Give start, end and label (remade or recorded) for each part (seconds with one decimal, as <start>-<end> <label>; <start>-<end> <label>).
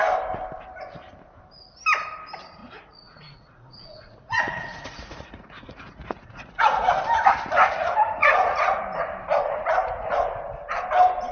0.0-2.6 recorded; 2.6-6.9 remade; 6.9-8.2 recorded; 8.2-8.8 remade; 8.8-11.3 recorded